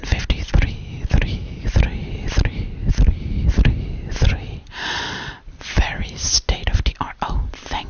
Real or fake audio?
real